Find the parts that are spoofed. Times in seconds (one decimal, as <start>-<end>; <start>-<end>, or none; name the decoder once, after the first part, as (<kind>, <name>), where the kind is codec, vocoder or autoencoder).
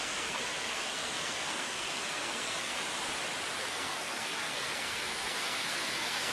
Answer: 0.0-2.8 (codec, SNAC); 3.6-6.3